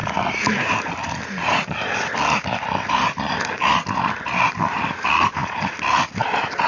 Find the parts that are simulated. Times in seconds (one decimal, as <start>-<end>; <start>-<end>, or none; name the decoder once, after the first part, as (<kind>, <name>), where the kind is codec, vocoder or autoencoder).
none